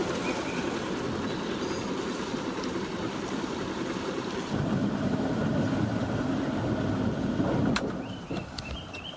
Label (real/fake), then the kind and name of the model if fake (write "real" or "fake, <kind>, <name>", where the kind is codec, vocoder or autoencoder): real